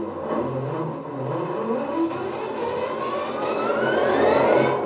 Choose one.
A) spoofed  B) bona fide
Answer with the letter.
B